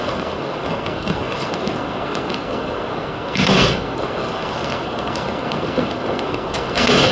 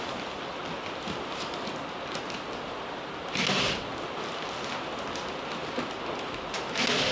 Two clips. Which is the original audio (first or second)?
second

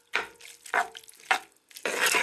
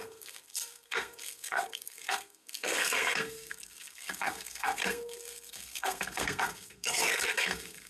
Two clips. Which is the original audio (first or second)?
first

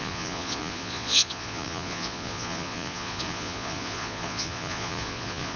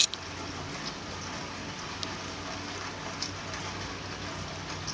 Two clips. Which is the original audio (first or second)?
second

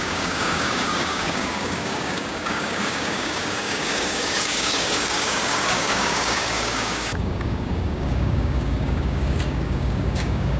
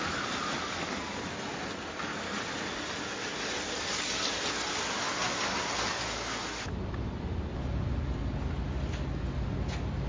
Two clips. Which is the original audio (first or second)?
second